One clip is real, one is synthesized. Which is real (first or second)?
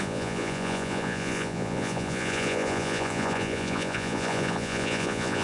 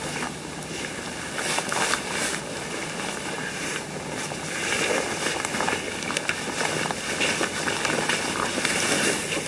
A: second